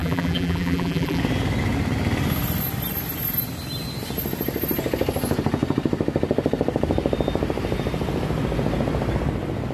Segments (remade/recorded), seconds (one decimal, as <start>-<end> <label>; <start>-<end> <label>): 0.0-1.2 remade; 1.2-9.7 recorded